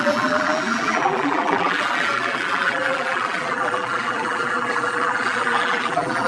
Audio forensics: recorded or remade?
remade